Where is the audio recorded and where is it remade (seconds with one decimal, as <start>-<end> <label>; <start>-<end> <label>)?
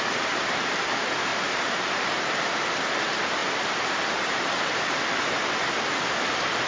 0.0-1.3 recorded; 1.3-2.6 remade; 2.6-3.4 recorded; 3.4-4.0 remade; 4.0-6.7 recorded